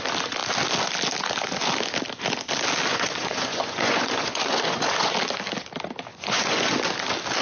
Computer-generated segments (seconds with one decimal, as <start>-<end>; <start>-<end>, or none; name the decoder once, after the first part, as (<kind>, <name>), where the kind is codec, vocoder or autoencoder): 2.9-5.1 (vocoder, Vocos); 6.1-6.7